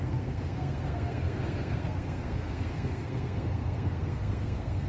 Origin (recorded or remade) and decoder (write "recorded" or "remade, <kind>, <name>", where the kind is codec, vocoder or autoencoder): remade, codec, SNAC